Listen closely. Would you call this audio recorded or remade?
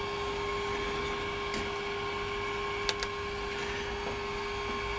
recorded